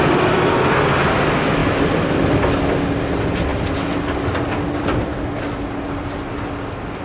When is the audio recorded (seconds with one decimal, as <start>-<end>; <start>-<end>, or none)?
0.0-1.6; 2.5-7.0